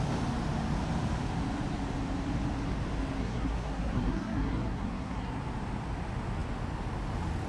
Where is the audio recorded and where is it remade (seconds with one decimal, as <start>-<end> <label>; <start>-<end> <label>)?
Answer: 0.0-3.2 recorded; 3.2-5.4 remade; 5.4-7.5 recorded

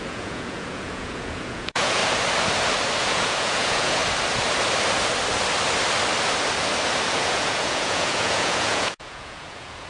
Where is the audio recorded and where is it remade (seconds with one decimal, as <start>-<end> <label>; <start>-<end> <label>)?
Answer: 0.0-2.0 remade; 2.0-3.0 recorded; 3.0-4.0 remade; 4.0-7.1 recorded; 7.1-9.9 remade

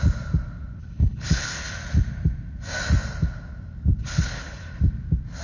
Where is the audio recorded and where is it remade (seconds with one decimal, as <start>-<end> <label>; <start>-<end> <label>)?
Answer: 0.0-0.8 recorded; 0.8-1.7 remade; 1.7-4.0 recorded; 4.0-4.8 remade; 4.8-5.4 recorded

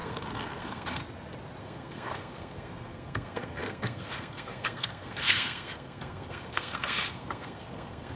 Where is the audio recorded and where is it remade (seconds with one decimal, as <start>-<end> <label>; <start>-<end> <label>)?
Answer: 0.0-1.0 remade; 1.0-1.6 recorded; 1.6-8.2 remade

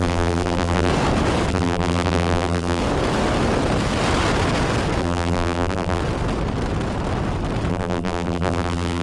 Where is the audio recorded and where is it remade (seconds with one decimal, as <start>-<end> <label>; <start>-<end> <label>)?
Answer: 0.0-0.9 remade; 0.9-1.5 recorded; 1.5-2.8 remade; 2.8-5.0 recorded; 5.0-6.0 remade; 6.0-7.7 recorded; 7.7-9.0 remade

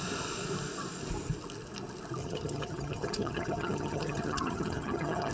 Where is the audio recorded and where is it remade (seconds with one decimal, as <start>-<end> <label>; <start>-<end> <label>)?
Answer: 0.0-2.2 recorded; 2.2-5.3 remade